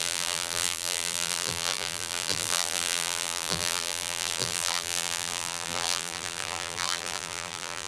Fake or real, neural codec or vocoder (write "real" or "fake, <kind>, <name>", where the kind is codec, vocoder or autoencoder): fake, vocoder, BigVGAN v2